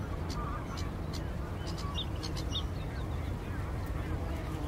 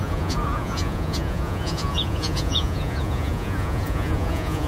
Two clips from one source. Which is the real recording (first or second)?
first